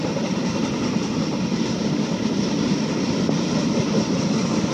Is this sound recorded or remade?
recorded